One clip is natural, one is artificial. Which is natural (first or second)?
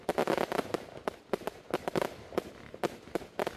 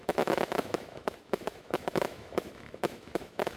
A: first